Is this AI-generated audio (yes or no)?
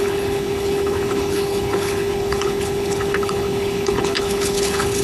yes